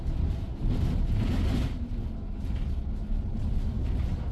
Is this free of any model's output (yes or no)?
yes